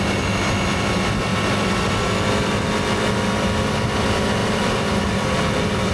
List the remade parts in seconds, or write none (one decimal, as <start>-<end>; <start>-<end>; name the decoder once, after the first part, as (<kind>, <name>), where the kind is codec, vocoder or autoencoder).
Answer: 4.4-5.4 (vocoder, BigVGAN v2)